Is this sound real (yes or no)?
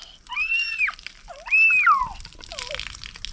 yes